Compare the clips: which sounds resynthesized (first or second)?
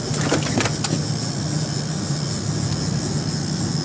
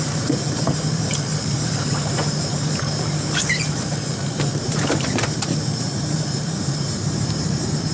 second